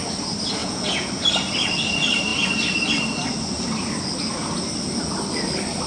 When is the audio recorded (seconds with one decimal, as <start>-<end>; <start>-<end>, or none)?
0.0-0.6; 1.1-5.9